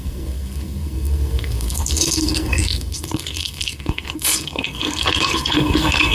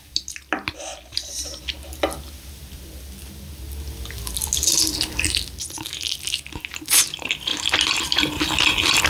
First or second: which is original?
second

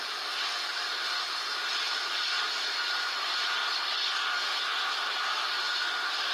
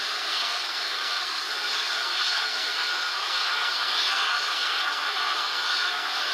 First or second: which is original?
first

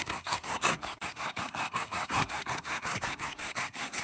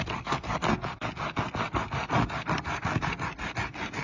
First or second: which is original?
second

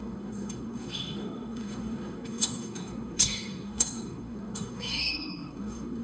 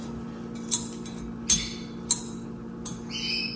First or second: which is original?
second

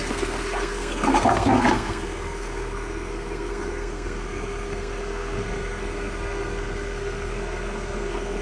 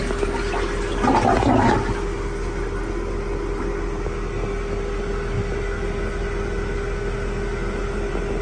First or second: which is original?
second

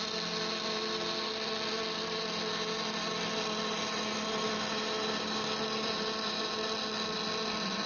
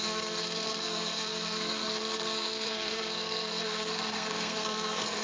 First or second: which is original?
first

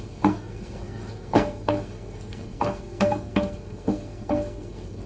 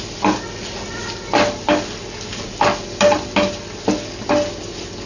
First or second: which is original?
second